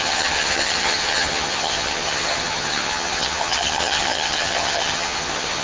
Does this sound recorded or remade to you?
remade